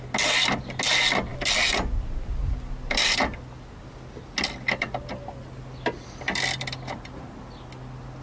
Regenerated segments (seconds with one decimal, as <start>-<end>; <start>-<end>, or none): none